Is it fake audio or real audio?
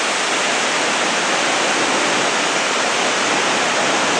real